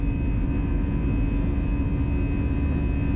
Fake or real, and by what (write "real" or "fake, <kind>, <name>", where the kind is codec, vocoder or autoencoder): real